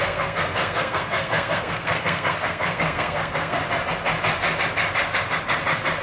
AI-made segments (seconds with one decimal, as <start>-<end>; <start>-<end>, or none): 0.0-3.6